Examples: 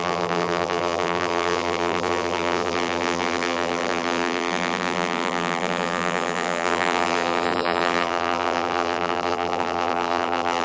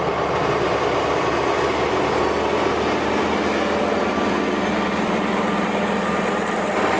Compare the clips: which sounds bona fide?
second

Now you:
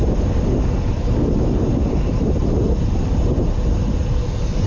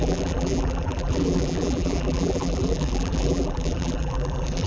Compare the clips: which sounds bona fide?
first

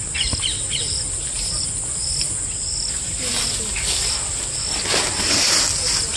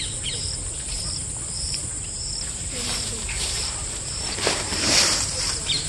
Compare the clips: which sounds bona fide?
first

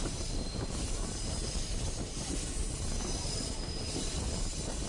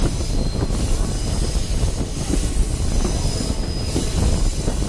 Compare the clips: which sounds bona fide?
second